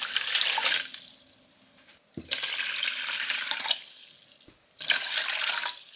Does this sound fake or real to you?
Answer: real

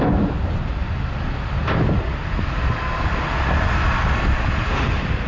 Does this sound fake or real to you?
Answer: real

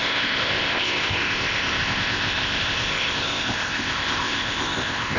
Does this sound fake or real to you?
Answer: fake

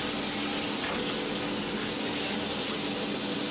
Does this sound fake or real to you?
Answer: real